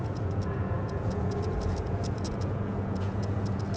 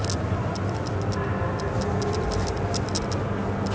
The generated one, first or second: first